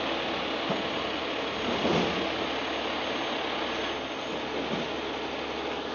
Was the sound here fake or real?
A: real